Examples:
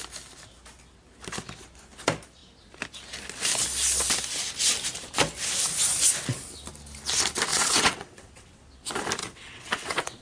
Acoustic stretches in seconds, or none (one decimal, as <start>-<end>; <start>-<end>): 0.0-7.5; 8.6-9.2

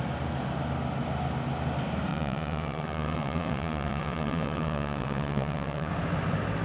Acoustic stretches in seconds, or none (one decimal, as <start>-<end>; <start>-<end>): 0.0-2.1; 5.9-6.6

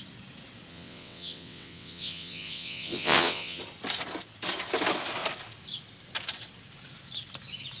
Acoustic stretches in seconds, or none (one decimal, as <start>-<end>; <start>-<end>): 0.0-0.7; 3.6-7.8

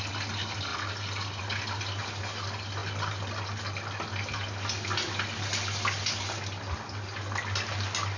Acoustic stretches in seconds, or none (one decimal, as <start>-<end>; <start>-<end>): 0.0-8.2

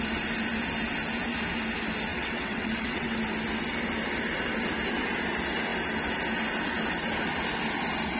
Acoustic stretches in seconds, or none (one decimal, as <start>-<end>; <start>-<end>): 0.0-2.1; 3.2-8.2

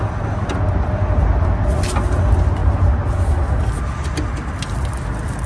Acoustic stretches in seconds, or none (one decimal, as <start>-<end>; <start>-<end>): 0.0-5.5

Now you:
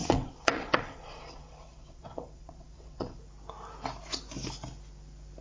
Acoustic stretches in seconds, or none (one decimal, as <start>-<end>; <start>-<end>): 3.2-5.4

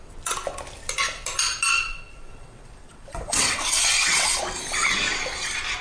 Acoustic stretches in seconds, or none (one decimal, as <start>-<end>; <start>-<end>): 0.0-1.7; 4.4-5.8